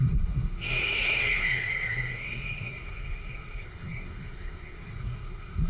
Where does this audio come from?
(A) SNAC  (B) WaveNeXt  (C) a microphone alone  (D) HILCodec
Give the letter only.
A